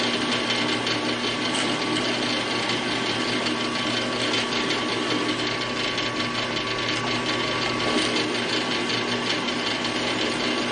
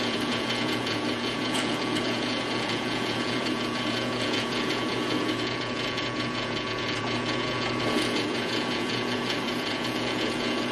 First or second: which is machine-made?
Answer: second